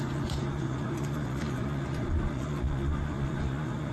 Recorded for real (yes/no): no